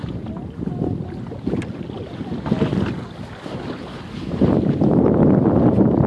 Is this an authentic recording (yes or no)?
yes